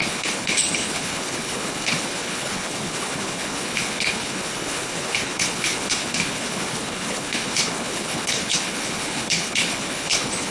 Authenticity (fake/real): fake